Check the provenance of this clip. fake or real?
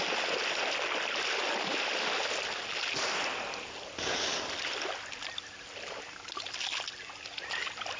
real